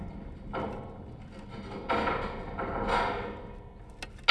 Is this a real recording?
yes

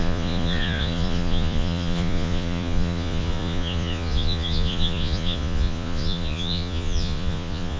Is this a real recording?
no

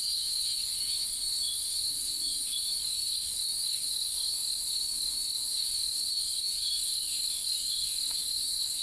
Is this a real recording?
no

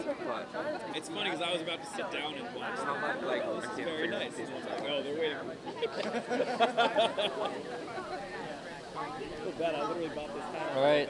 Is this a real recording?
yes